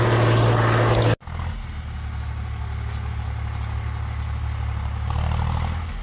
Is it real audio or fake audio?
real